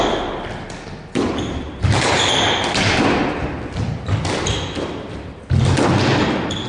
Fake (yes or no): no